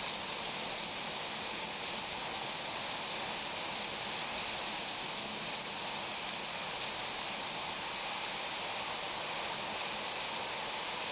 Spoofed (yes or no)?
no